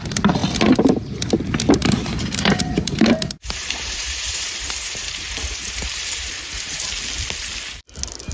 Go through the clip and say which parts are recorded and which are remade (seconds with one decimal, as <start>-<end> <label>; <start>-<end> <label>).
0.0-1.8 recorded; 1.8-6.8 remade; 6.8-8.3 recorded